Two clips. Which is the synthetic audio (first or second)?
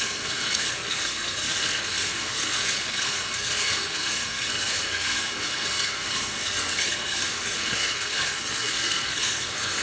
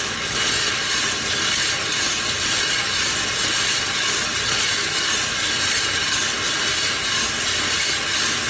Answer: first